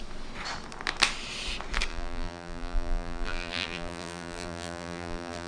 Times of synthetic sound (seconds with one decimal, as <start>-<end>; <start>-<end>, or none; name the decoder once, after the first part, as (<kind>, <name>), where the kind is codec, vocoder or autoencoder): 1.9-5.5 (vocoder, BigVGAN v2)